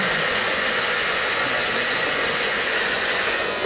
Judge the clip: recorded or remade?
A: remade